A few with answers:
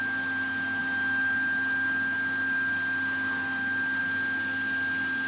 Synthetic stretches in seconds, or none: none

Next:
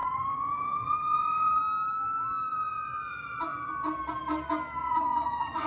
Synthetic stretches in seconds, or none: 0.0-1.6 (vocoder, Vocos); 2.5-3.7; 4.8-5.7

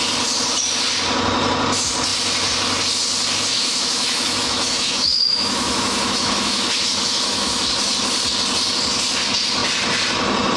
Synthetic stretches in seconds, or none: 3.5-7.6 (autoencoder, DAC-VAE)

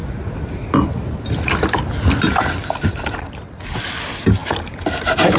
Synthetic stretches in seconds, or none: none

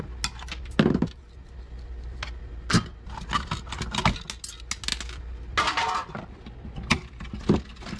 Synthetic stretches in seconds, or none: none

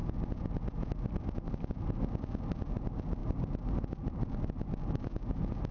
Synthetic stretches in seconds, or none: none

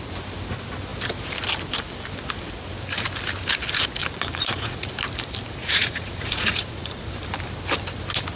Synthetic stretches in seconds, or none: 4.0-4.9 (vocoder, Vocos); 5.6-7.1